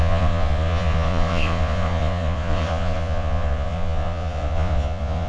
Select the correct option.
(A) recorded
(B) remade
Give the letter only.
B